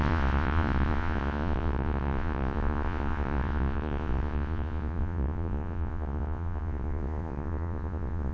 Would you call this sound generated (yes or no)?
yes